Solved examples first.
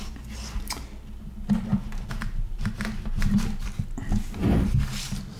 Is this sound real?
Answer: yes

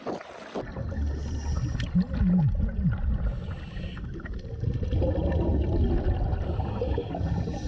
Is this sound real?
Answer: yes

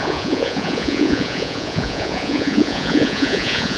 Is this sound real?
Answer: no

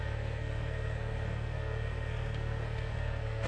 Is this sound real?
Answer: no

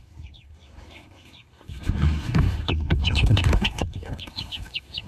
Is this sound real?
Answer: no